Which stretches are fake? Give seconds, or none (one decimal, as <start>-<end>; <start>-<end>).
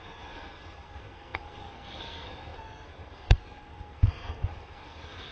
0.0-5.3